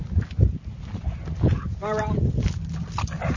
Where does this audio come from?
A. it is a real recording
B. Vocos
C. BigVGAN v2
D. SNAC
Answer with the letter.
A